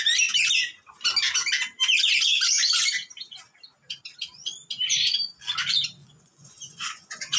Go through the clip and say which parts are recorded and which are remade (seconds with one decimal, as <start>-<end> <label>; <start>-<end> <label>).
0.0-6.0 recorded; 6.0-7.4 remade